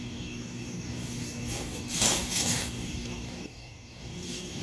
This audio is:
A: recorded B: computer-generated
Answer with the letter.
B